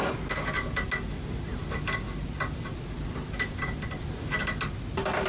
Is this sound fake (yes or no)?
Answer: no